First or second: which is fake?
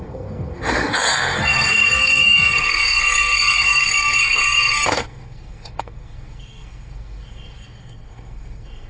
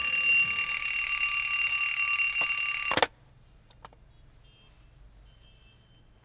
first